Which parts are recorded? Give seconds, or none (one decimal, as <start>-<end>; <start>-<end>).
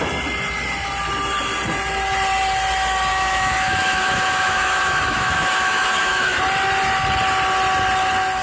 0.0-3.1; 6.4-8.4